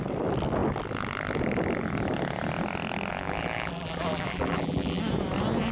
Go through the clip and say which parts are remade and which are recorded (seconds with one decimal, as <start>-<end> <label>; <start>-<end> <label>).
0.0-3.1 recorded; 3.1-5.0 remade; 5.0-5.7 recorded